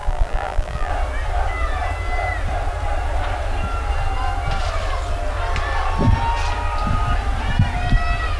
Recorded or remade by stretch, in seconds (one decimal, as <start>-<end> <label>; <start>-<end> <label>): 0.0-0.9 remade; 0.9-8.4 recorded